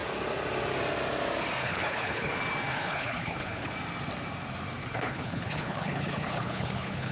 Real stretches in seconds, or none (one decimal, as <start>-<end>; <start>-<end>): 0.0-1.6; 2.3-2.7; 3.7-4.8